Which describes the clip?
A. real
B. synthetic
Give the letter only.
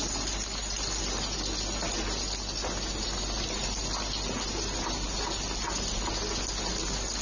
A